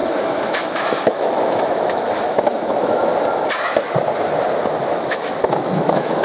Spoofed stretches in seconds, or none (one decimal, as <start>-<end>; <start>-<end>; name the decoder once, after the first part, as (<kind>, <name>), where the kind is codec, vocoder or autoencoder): 0.0-3.1 (autoencoder, DAC-VAE); 4.8-6.2